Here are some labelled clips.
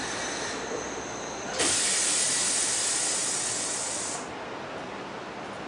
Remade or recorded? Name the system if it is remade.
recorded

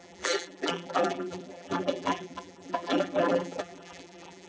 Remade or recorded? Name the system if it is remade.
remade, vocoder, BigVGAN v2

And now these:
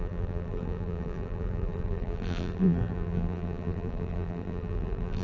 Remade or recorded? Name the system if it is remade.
remade, vocoder, BigVGAN v2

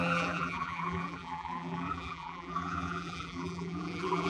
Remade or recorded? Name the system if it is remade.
remade, vocoder, BigVGAN v2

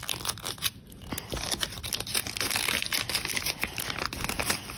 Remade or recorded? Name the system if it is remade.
recorded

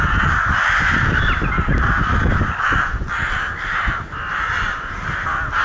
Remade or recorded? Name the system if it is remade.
recorded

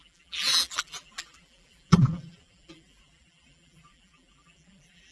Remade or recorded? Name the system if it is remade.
remade, vocoder, BigVGAN v2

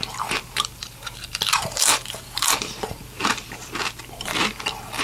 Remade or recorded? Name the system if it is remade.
remade, vocoder, BigVGAN v2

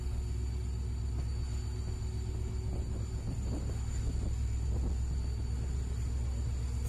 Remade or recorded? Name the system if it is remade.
recorded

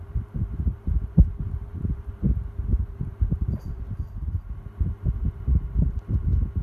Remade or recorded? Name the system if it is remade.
remade, vocoder, BigVGAN v2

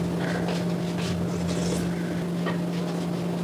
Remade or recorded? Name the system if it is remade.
recorded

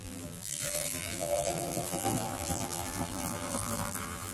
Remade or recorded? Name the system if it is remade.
remade, vocoder, BigVGAN v2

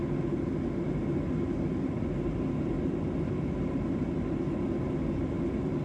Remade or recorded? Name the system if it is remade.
recorded